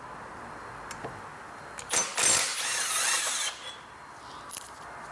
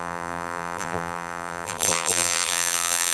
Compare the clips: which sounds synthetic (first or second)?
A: second